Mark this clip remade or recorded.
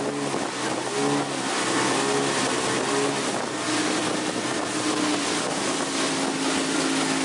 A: recorded